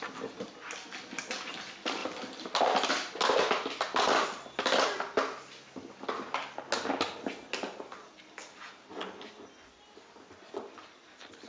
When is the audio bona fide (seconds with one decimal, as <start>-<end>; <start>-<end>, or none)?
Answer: 0.0-11.5